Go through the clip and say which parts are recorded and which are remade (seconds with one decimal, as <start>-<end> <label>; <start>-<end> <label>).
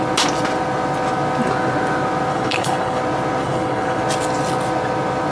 0.0-2.3 recorded; 2.3-3.0 remade; 3.0-3.4 recorded; 3.4-4.0 remade; 4.0-5.3 recorded